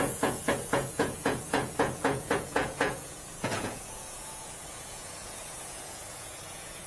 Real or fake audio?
fake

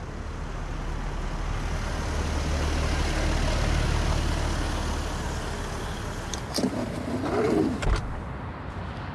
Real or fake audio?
real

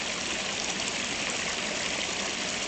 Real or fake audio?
real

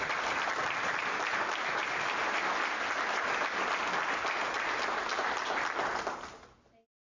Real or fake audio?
real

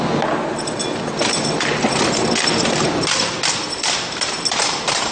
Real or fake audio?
real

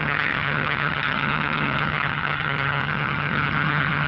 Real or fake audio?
fake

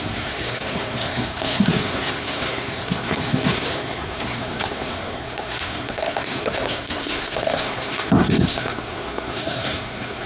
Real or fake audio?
fake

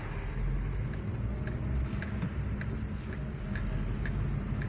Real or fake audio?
real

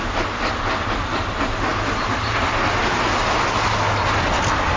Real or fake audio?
real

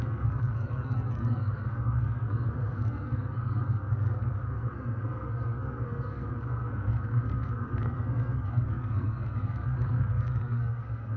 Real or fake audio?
fake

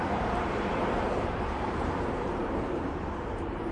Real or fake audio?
fake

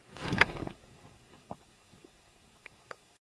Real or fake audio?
fake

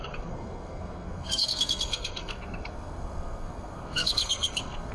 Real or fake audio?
fake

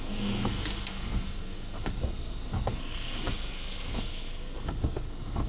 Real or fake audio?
fake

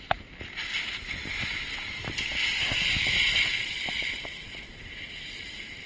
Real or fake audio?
real